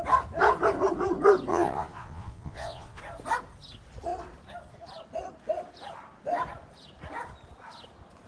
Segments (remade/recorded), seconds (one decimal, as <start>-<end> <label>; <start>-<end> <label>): 0.0-1.5 recorded; 1.5-3.0 remade; 3.0-8.3 recorded